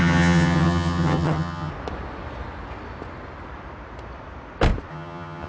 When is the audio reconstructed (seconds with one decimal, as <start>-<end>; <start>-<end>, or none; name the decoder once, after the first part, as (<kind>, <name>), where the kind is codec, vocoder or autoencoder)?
0.0-1.7 (vocoder, HiFi-GAN); 4.9-5.5